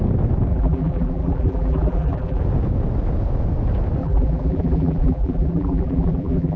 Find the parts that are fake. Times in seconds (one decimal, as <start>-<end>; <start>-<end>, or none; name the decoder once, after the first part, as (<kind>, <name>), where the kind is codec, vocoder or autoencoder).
0.5-2.4 (vocoder, BigVGAN v2); 4.0-6.6